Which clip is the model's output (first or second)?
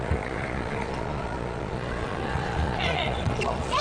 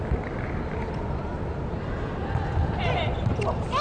first